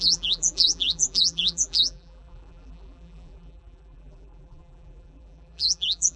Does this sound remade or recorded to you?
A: remade